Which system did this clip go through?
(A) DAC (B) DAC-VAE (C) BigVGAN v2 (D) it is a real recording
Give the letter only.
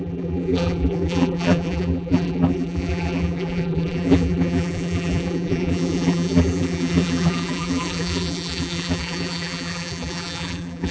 C